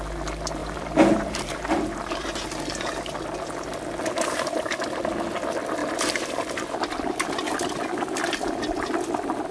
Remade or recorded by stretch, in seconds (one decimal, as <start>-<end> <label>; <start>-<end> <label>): 0.0-0.6 recorded; 0.6-2.9 remade; 2.9-5.8 recorded; 5.8-6.3 remade; 6.3-9.5 recorded